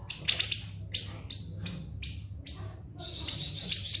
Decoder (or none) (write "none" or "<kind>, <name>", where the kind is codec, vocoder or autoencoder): none